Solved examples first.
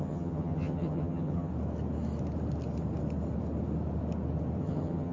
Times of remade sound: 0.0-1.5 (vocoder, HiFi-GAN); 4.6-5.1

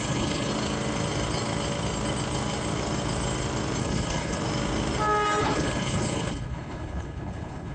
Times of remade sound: 0.0-0.5 (codec, HILCodec); 3.8-4.4; 5.4-7.7

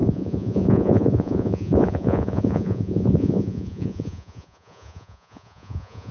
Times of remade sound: 0.0-6.1 (vocoder, Vocos)